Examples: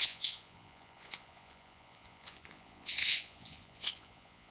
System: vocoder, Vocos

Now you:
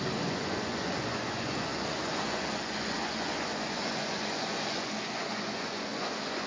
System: vocoder, Vocos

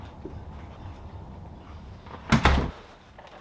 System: none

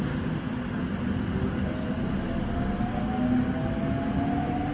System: none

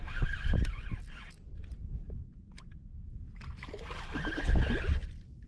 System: none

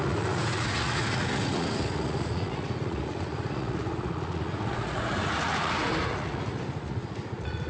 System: vocoder, Vocos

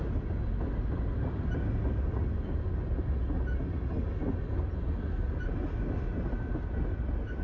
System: none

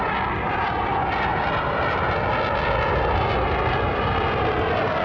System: none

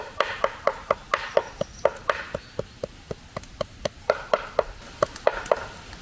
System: none